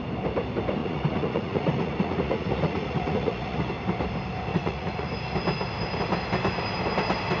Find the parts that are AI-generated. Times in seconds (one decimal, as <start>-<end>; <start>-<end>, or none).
0.8-3.7; 4.5-5.1